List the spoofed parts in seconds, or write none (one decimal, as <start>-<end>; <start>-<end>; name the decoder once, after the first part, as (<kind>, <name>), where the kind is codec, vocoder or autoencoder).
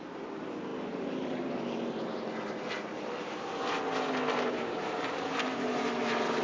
0.0-6.4 (vocoder, BigVGAN v2)